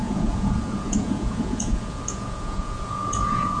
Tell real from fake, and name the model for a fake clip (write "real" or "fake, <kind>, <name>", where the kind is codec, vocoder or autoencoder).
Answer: fake, vocoder, Vocos